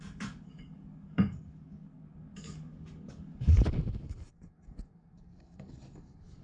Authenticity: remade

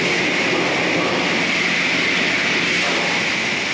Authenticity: recorded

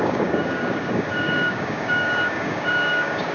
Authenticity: remade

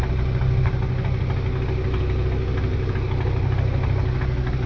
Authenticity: recorded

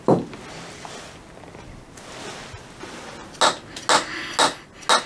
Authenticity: recorded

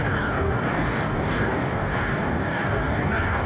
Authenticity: remade